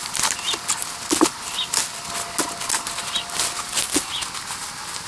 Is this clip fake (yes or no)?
no